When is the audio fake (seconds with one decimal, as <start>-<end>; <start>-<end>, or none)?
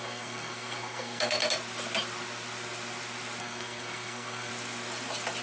0.0-1.4; 3.4-4.5